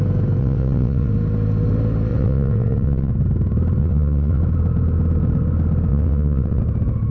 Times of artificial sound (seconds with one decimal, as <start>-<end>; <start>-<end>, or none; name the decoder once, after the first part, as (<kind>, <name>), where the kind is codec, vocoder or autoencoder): 0.4-1.1 (vocoder, WaveNeXt); 2.1-3.1; 3.8-4.4; 5.9-6.6